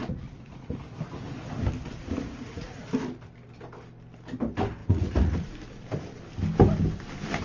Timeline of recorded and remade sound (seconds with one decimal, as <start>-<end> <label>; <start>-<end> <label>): 0.0-0.8 remade; 0.8-2.0 recorded; 2.0-2.8 remade; 2.8-4.8 recorded; 4.8-5.5 remade; 5.5-7.4 recorded